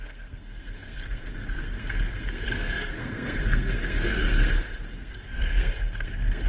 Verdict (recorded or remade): remade